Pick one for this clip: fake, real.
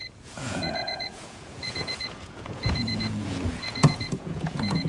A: fake